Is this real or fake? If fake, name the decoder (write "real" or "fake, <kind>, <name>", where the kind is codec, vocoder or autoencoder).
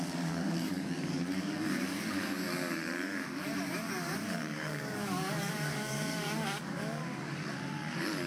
fake, codec, DAC